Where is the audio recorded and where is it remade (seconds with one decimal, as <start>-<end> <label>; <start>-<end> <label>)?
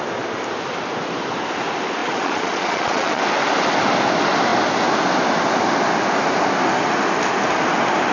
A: 0.0-2.0 recorded; 2.0-3.2 remade; 3.2-8.1 recorded